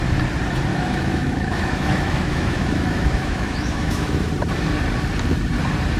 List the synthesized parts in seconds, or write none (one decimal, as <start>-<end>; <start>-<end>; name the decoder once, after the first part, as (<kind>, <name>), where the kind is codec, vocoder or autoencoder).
0.7-4.3 (autoencoder, DAC-VAE)